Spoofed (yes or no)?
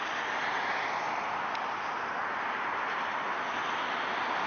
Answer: no